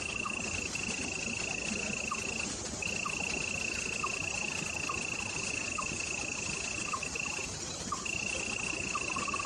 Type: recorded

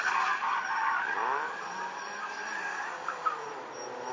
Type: recorded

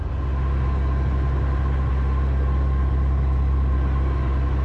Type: recorded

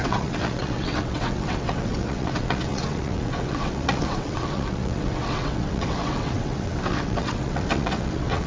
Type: remade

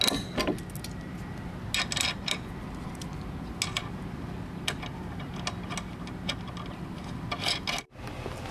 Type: recorded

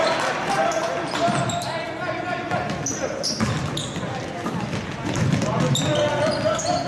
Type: recorded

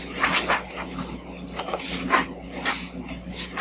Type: recorded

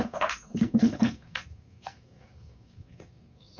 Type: remade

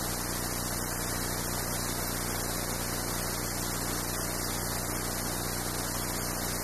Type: recorded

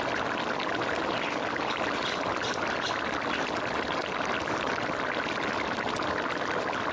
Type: recorded